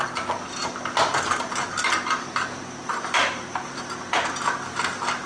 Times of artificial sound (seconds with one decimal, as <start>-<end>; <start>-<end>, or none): none